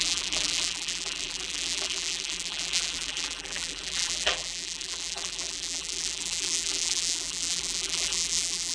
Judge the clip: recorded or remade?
remade